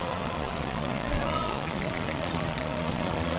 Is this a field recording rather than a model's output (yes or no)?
no